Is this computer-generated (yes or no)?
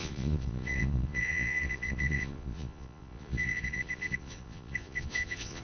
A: yes